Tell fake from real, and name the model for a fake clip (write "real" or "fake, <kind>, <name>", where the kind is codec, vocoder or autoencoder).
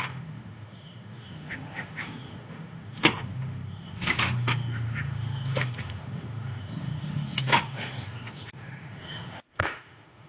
fake, autoencoder, DAC-VAE